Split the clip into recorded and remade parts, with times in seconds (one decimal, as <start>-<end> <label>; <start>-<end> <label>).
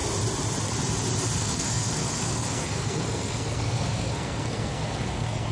0.0-1.4 recorded; 1.4-5.5 remade